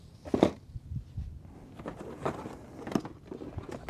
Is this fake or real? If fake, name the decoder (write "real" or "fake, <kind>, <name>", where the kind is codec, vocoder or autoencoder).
real